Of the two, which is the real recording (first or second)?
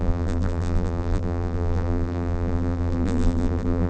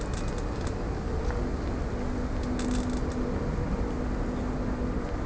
second